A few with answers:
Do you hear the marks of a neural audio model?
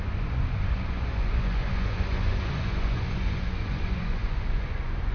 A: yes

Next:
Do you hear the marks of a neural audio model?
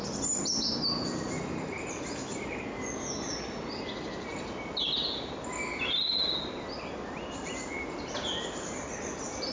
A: no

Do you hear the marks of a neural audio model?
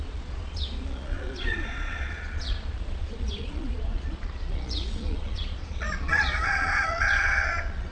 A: yes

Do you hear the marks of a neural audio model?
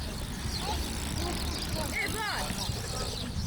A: no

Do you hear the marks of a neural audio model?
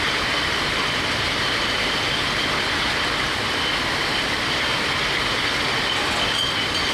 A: no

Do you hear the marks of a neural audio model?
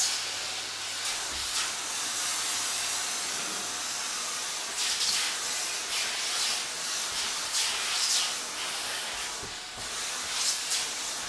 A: no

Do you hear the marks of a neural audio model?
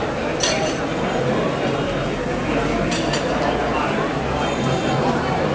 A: no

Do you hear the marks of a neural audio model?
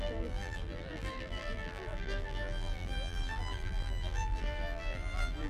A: yes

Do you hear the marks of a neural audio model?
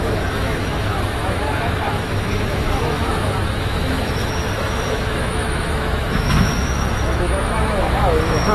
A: yes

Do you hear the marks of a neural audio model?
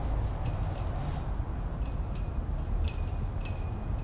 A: no